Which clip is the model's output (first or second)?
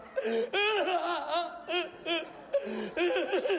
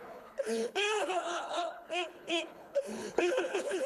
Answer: second